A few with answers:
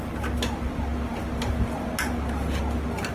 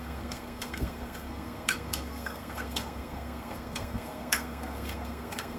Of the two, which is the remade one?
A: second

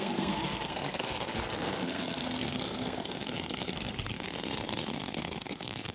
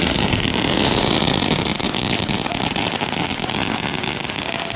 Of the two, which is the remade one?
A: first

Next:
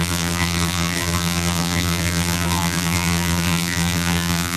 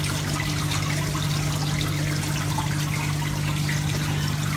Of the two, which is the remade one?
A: first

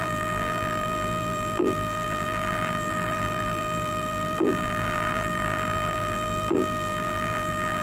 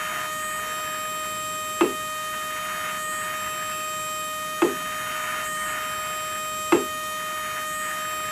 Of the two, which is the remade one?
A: first